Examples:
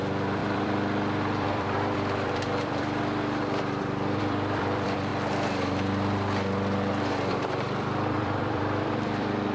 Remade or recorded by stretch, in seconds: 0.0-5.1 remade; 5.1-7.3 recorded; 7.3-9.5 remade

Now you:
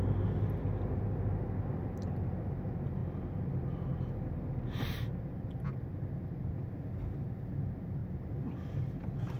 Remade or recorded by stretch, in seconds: 0.0-8.0 recorded; 8.0-9.4 remade

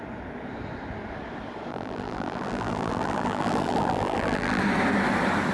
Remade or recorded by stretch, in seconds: 0.0-1.7 recorded; 1.7-4.6 remade; 4.6-5.5 recorded

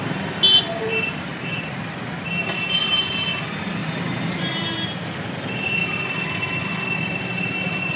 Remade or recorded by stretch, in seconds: 0.0-1.3 recorded; 1.3-1.8 remade; 1.8-3.8 recorded; 3.8-5.1 remade; 5.1-8.0 recorded

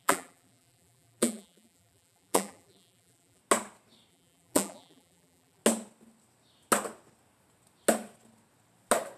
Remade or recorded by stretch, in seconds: 0.0-3.4 remade; 3.4-4.1 recorded; 4.1-5.6 remade; 5.6-9.2 recorded